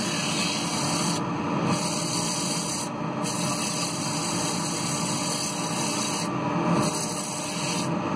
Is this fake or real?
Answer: real